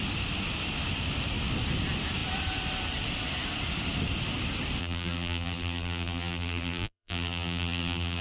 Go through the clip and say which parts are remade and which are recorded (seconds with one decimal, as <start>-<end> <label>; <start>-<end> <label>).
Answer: 0.0-4.8 recorded; 4.8-8.2 remade